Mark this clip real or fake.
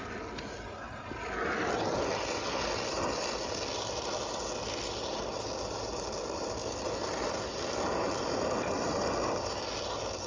real